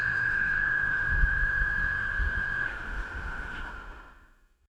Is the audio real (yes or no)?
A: no